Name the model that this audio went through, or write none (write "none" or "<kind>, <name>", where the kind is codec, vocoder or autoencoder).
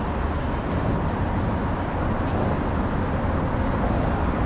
none